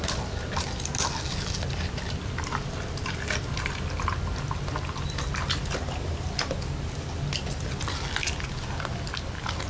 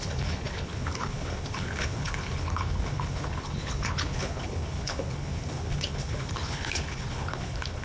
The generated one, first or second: second